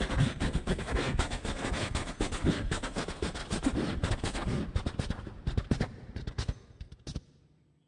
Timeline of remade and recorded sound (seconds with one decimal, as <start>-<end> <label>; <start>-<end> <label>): 0.0-3.4 remade; 3.4-4.1 recorded; 4.1-4.6 remade; 4.6-6.3 recorded; 6.3-6.9 remade; 6.9-7.9 recorded